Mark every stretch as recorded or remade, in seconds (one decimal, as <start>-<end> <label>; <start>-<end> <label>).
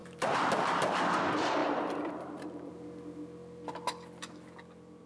0.0-0.5 remade; 0.5-1.6 recorded; 1.6-2.7 remade; 2.7-5.1 recorded